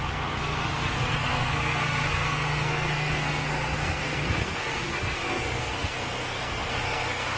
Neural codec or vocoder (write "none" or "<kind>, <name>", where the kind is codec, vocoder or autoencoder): codec, SNAC